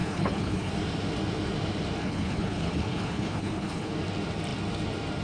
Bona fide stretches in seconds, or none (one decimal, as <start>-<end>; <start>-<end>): 0.7-2.0; 3.9-5.2

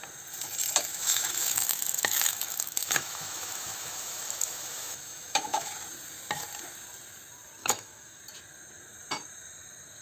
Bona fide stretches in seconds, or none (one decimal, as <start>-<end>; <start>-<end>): 0.0-0.9; 5.7-7.6; 8.2-10.0

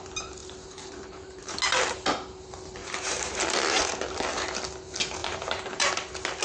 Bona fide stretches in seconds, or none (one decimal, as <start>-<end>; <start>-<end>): 0.0-0.4; 1.6-2.8; 3.4-5.2; 5.9-6.4

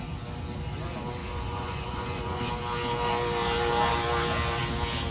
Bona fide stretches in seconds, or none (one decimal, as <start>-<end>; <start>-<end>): 0.0-1.2; 2.5-5.1